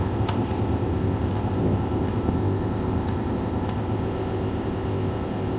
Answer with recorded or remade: remade